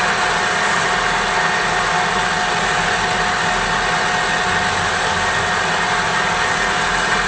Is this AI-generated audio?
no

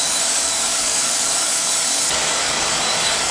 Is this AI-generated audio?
yes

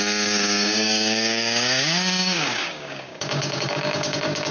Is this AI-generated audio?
yes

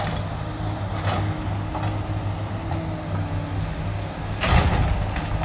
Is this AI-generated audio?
no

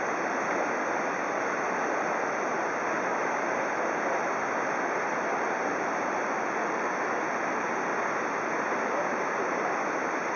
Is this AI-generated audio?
no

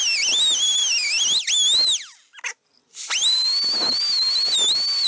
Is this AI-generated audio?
no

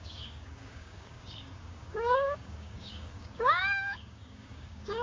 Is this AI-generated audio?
yes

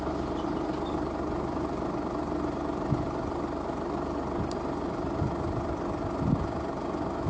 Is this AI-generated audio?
no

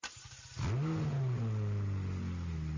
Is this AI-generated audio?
no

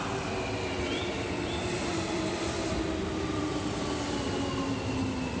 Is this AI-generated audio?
no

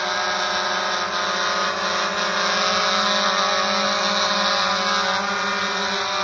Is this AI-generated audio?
no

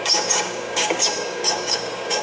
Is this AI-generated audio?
yes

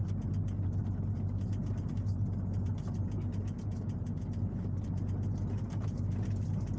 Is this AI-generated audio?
no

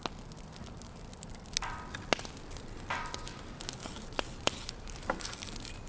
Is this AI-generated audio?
no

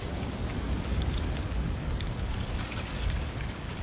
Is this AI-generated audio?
yes